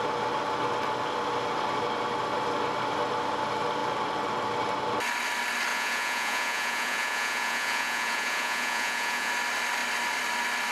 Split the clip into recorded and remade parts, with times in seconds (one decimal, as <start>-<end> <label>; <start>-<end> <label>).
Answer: 0.0-5.7 recorded; 5.7-9.3 remade; 9.3-10.7 recorded